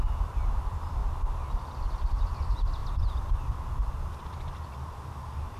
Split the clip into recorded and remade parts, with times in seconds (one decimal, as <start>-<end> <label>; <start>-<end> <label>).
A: 0.0-1.0 remade; 1.0-2.1 recorded; 2.1-2.8 remade; 2.8-3.5 recorded; 3.5-5.6 remade